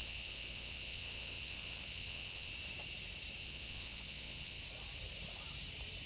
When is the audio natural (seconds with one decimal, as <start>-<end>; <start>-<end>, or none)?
2.5-3.4; 4.6-6.1